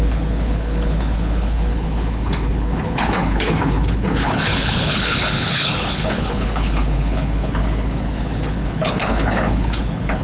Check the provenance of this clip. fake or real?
fake